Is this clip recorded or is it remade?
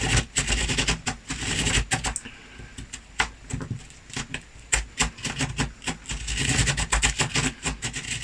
recorded